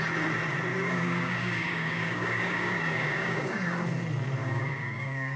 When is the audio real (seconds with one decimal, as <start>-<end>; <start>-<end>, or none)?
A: 0.0-0.7; 3.6-4.4